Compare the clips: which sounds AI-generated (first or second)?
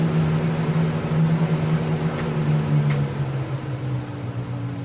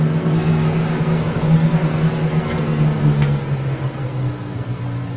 second